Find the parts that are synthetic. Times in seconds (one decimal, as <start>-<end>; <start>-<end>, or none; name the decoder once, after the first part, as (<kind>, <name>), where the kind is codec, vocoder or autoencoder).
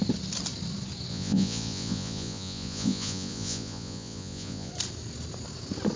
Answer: 1.1-4.7 (vocoder, Vocos)